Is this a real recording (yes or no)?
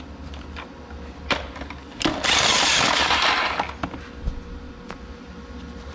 yes